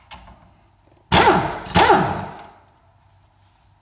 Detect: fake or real real